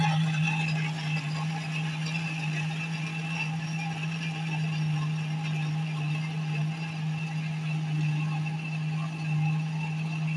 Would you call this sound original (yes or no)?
yes